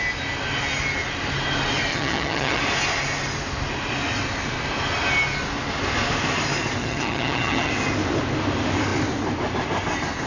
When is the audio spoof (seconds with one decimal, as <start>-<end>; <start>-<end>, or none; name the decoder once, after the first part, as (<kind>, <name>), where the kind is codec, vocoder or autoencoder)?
1.9-2.6 (vocoder, HiFi-GAN); 6.8-7.7